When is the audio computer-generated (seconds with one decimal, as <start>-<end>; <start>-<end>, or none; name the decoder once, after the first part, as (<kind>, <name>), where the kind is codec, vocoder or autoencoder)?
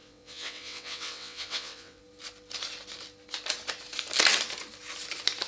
0.0-2.0 (vocoder, WaveNeXt)